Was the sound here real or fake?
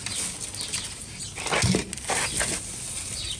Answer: real